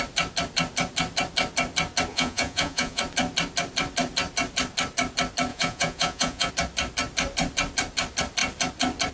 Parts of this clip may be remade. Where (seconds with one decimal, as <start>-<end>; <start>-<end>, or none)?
2.1-3.0; 5.5-6.5